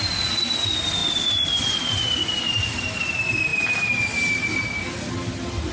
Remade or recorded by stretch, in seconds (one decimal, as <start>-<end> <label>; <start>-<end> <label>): 0.0-5.7 recorded